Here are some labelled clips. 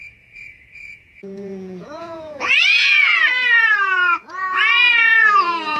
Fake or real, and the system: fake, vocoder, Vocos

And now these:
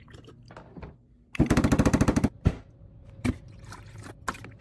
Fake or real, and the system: real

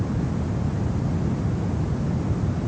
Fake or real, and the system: real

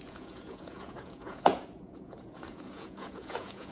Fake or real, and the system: fake, vocoder, Vocos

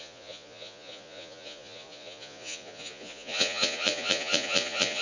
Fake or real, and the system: fake, vocoder, Vocos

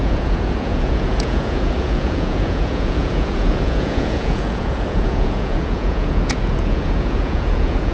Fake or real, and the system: fake, vocoder, Vocos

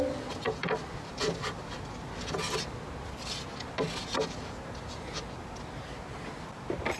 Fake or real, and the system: real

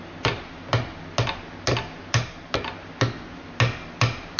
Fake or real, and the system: real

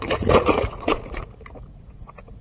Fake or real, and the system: fake, vocoder, Vocos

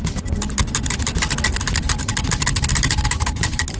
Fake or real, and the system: real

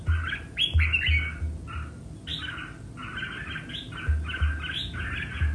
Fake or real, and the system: real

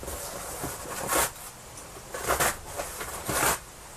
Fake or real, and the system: real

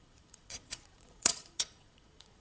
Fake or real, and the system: fake, vocoder, Vocos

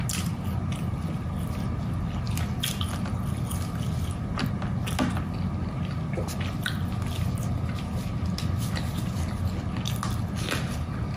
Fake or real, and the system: real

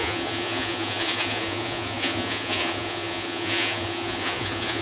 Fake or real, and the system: fake, vocoder, Vocos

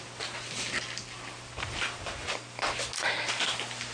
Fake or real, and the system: real